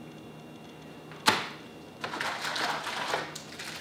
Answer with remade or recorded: recorded